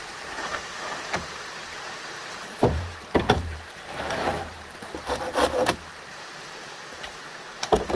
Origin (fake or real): fake